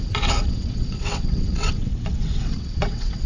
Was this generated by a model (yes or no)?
yes